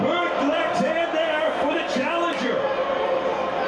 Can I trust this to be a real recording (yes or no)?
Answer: yes